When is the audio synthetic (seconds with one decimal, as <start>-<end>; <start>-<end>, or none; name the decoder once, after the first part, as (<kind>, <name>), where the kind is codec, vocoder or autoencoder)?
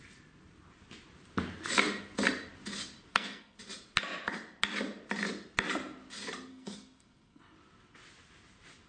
3.1-3.6 (codec, SNAC); 6.5-7.4